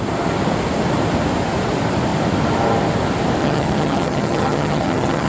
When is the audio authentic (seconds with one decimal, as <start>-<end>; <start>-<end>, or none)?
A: 0.0-3.4